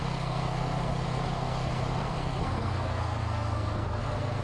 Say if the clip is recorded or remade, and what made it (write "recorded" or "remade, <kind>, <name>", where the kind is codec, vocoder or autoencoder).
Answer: remade, codec, SNAC